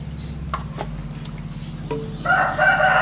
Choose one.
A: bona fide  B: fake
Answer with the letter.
A